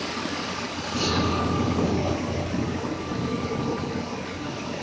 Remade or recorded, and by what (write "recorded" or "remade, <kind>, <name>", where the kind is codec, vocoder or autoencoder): remade, codec, DAC